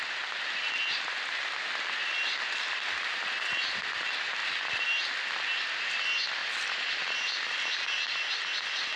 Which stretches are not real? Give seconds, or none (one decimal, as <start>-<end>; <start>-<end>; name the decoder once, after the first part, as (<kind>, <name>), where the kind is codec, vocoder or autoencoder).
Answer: none